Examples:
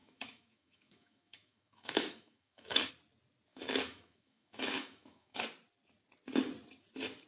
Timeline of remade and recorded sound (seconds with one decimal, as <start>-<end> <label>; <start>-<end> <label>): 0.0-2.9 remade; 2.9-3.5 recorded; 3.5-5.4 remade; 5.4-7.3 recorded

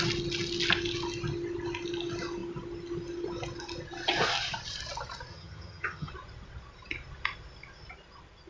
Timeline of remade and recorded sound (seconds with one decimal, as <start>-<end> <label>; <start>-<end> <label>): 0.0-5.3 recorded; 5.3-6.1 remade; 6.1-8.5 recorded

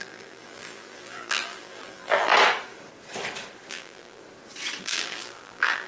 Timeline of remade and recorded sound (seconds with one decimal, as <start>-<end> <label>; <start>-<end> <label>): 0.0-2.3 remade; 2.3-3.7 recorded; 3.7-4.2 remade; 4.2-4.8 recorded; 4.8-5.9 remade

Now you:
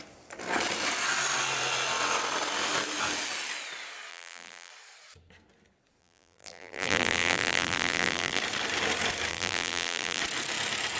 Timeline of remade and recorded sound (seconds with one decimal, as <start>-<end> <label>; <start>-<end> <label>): 0.0-4.1 recorded; 4.1-4.7 remade; 4.7-6.0 recorded; 6.0-8.4 remade; 8.4-9.3 recorded; 9.3-10.2 remade; 10.2-11.0 recorded

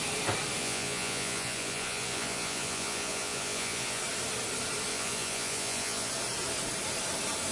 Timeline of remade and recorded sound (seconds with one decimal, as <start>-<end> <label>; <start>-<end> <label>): 0.0-0.6 recorded; 0.6-4.0 remade; 4.0-4.9 recorded; 4.9-6.1 remade; 6.1-7.5 recorded

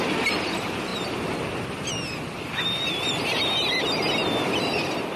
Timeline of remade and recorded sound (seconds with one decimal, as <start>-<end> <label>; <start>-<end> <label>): 0.0-5.2 recorded

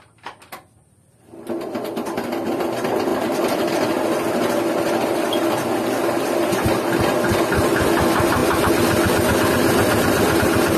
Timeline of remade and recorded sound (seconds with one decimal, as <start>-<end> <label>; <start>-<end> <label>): 0.0-3.1 recorded; 3.1-3.7 remade; 3.7-10.8 recorded

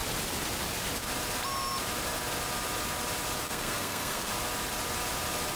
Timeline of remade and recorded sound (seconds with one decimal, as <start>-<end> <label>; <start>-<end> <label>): 0.0-3.4 recorded; 3.4-4.3 remade; 4.3-5.6 recorded